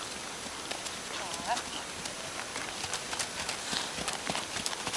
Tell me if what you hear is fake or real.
fake